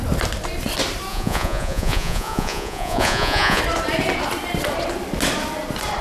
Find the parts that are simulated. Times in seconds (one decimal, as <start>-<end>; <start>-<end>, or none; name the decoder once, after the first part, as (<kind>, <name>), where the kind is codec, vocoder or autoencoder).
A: 1.1-3.6 (vocoder, Vocos)